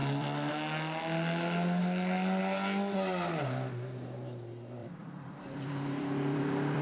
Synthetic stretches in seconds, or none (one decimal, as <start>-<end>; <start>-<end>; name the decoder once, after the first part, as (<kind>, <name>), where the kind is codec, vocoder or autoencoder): 0.0-0.5 (vocoder, BigVGAN v2); 4.8-6.8